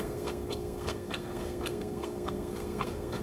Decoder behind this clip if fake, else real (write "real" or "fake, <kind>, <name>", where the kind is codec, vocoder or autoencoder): fake, codec, SNAC